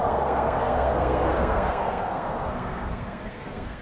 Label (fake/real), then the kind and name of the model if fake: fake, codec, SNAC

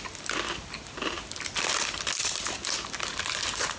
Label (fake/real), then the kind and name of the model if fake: real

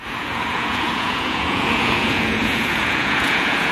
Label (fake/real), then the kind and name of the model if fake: fake, vocoder, Vocos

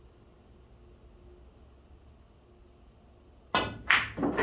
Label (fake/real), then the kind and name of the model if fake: real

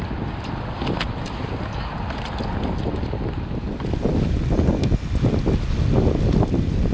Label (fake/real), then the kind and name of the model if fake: real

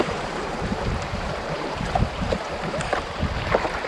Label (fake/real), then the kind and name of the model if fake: fake, vocoder, BigVGAN v2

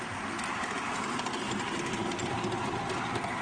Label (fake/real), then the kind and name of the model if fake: real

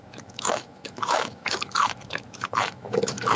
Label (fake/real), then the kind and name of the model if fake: fake, autoencoder, DAC-VAE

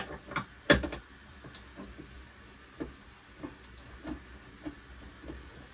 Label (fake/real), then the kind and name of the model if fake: real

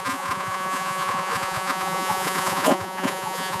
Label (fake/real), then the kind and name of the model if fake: fake, vocoder, Vocos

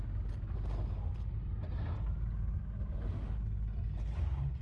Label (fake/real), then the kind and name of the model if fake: real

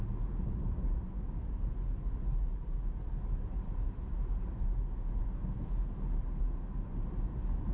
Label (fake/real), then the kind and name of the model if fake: real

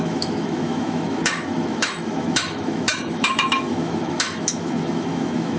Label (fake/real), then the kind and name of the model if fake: fake, autoencoder, DAC-VAE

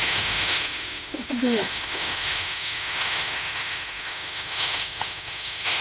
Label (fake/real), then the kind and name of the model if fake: fake, autoencoder, DAC-VAE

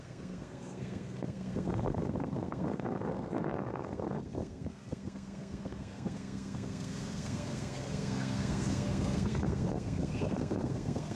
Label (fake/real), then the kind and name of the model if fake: fake, codec, SNAC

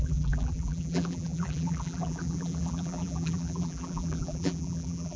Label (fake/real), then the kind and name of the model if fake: fake, vocoder, BigVGAN v2